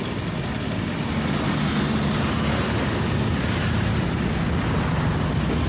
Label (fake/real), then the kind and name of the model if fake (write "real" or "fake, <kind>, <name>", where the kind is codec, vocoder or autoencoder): real